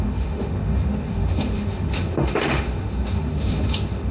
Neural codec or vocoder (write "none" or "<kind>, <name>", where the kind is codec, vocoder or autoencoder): autoencoder, DAC-VAE